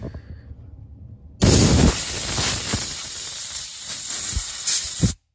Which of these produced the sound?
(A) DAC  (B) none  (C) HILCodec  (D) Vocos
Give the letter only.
B